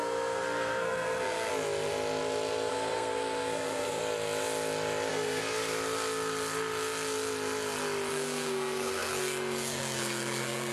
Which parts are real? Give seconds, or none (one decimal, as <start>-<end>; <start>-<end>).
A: 1.5-2.7; 4.0-5.1; 5.7-8.1